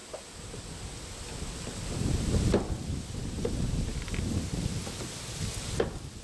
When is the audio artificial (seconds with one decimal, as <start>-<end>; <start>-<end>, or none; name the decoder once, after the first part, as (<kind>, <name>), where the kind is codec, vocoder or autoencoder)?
none